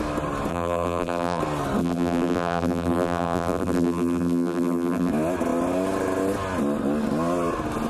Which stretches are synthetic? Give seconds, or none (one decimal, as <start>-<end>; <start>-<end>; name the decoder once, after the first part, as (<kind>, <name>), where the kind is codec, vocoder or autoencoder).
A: 0.5-1.4 (vocoder, BigVGAN v2); 1.8-5.1